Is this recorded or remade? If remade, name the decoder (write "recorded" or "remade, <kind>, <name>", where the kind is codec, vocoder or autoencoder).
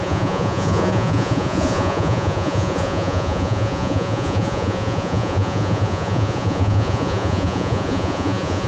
remade, vocoder, Vocos